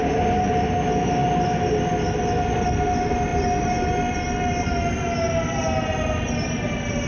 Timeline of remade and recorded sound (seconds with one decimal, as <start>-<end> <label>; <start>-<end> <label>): 0.0-0.5 remade; 0.5-3.3 recorded; 3.3-3.9 remade; 3.9-7.1 recorded